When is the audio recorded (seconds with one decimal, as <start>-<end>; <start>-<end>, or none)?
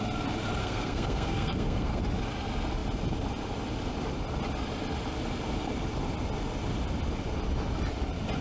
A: 0.0-0.6; 2.0-8.4